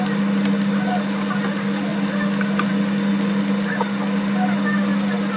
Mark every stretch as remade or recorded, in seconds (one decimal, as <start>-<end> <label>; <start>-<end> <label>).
0.0-5.4 recorded